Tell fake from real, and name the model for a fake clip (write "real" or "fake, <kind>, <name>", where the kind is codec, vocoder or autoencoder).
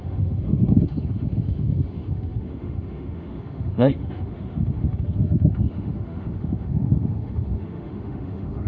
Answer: fake, autoencoder, DAC-VAE